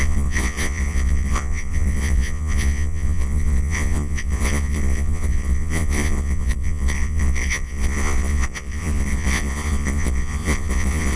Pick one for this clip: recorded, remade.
remade